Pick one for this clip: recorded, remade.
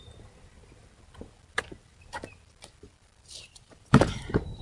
remade